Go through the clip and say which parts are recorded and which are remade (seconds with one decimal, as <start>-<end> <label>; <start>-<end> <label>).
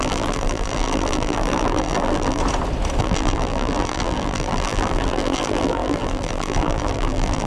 0.0-2.4 remade; 2.4-3.0 recorded; 3.0-7.5 remade